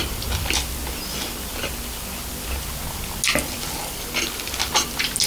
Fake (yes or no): no